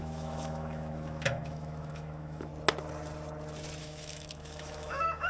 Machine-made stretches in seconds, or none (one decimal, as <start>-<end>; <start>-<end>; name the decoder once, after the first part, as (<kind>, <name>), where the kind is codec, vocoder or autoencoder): 0.0-2.5 (autoencoder, DAC-VAE); 3.8-5.3